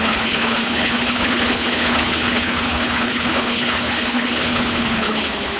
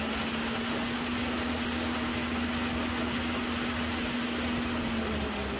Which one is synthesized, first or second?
first